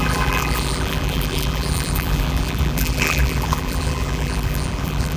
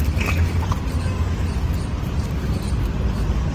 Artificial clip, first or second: first